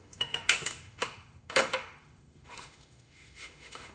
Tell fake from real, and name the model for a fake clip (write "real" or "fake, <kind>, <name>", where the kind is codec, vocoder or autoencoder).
fake, autoencoder, DAC-VAE